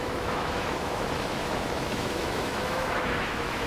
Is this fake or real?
fake